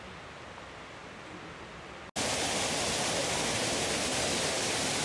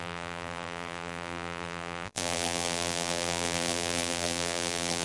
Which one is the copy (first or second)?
second